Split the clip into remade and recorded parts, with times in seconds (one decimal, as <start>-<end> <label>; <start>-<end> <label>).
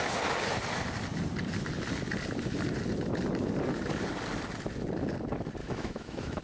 0.0-5.6 recorded; 5.6-6.4 remade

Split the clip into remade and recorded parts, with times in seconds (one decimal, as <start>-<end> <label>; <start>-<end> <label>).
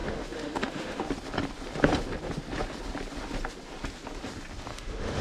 0.0-1.0 remade; 1.0-4.7 recorded; 4.7-5.2 remade